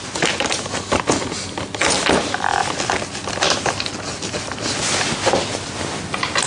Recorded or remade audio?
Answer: recorded